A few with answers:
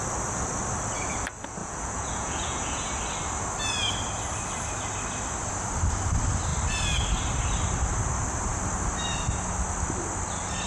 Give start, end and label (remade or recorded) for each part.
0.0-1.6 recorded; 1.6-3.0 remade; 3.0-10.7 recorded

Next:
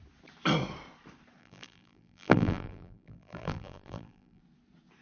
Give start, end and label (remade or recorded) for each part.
0.0-1.4 recorded; 1.4-4.4 remade; 4.4-5.0 recorded